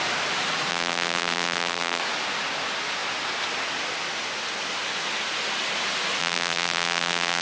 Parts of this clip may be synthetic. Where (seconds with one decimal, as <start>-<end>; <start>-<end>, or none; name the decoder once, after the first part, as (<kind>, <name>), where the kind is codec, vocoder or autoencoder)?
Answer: 0.7-2.0 (vocoder, BigVGAN v2); 6.2-7.4

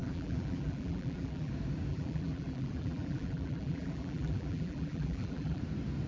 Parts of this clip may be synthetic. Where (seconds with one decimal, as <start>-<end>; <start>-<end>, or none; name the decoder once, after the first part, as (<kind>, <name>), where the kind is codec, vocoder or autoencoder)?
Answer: 0.0-1.5 (vocoder, BigVGAN v2); 1.9-5.6

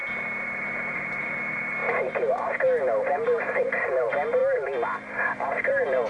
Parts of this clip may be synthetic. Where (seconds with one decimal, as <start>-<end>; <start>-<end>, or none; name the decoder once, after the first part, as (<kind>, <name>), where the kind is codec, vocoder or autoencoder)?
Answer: 0.0-4.4 (vocoder, BigVGAN v2); 5.2-6.1